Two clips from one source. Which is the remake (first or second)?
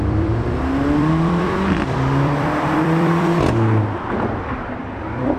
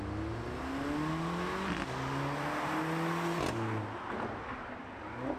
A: first